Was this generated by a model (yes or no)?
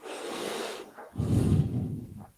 yes